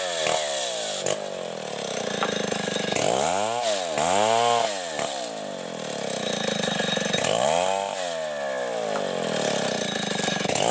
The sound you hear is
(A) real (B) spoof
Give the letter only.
A